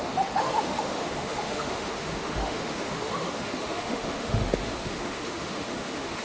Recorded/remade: remade